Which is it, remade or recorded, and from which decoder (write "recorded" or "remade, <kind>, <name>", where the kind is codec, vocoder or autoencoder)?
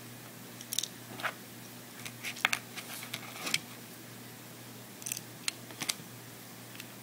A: recorded